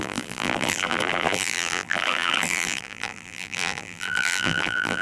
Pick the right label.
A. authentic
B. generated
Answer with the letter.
B